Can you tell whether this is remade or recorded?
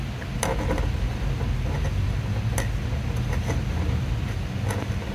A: recorded